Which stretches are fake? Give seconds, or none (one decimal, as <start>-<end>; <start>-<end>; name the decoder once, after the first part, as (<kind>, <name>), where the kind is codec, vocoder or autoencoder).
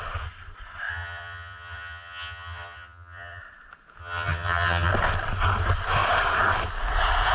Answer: 0.9-3.4 (vocoder, HiFi-GAN); 4.0-4.9